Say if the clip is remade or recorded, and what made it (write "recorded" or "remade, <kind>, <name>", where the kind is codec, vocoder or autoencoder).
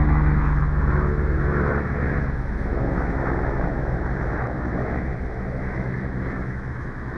remade, autoencoder, DAC-VAE